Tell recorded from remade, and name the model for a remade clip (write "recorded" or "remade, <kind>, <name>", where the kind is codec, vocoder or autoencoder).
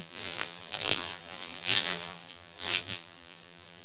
remade, vocoder, BigVGAN v2